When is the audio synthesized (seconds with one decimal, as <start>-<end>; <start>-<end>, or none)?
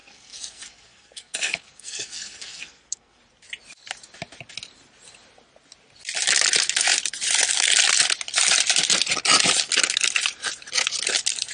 0.0-3.2